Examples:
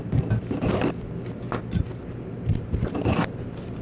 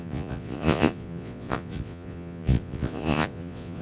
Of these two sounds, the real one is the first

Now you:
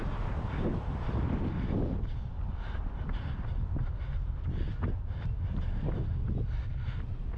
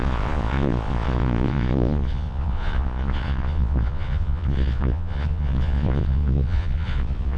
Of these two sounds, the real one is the first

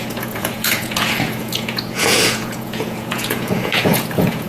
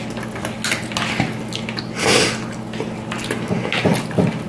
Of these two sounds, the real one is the second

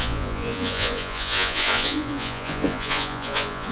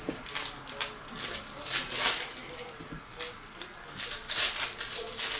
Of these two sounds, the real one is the second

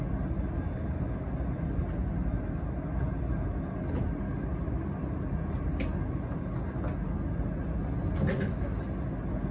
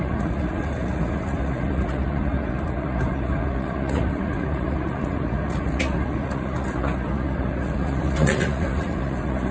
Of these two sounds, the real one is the first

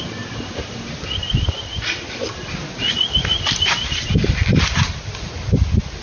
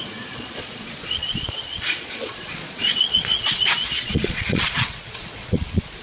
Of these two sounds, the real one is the first